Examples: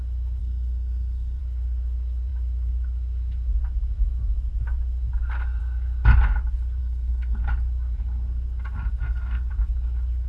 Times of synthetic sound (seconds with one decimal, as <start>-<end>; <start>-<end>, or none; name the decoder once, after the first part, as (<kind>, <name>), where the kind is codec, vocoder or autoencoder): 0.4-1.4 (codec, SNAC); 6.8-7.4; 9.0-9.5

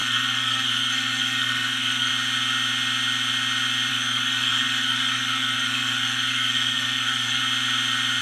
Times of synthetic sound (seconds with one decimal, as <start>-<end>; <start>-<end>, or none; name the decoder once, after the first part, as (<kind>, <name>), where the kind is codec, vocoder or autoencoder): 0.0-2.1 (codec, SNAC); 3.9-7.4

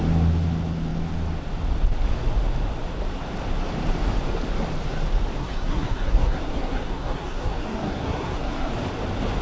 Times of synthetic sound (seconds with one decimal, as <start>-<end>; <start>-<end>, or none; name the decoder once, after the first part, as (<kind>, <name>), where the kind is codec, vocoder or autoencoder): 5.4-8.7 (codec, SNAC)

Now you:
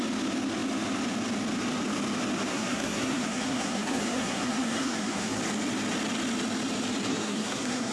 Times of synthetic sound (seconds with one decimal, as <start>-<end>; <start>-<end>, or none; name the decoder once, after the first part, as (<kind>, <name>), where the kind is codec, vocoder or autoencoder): 2.5-5.4 (codec, SNAC); 7.1-7.9

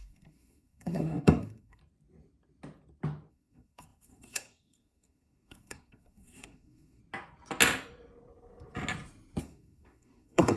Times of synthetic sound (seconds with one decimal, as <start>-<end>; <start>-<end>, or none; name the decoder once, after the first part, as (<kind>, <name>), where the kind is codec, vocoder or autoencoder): 0.0-1.8 (codec, SNAC); 3.3-7.0; 9.4-10.6

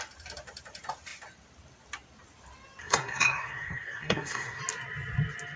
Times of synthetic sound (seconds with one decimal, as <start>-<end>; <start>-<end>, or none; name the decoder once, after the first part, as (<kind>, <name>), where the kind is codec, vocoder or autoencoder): 2.8-4.6 (codec, SNAC)